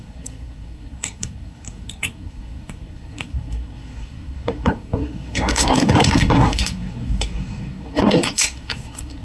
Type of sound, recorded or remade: remade